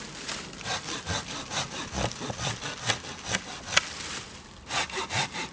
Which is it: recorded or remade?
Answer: recorded